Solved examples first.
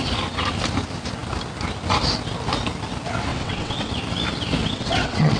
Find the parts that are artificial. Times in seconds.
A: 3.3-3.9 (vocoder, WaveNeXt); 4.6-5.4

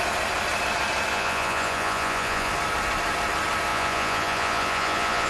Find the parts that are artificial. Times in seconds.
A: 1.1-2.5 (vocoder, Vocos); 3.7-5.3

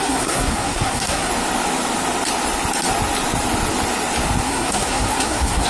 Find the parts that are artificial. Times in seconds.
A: 0.0-1.3 (codec, SNAC); 4.4-5.7

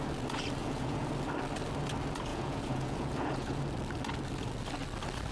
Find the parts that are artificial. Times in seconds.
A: 0.6-1.1 (vocoder, Vocos); 2.3-3.6

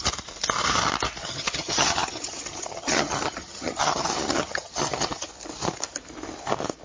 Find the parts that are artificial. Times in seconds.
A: 1.2-5.3 (vocoder, HiFi-GAN)

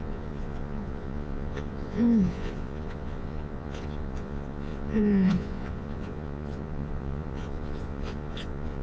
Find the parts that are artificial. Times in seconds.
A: 0.0-8.8 (vocoder, Vocos)

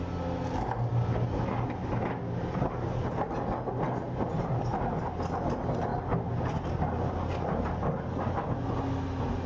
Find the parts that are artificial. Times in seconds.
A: none